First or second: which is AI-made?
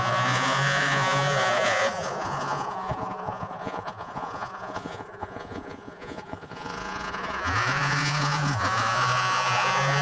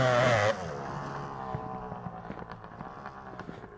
first